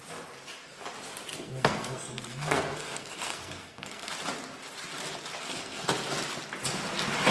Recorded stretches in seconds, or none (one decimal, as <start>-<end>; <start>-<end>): 0.0-1.3; 4.1-5.4; 5.9-7.3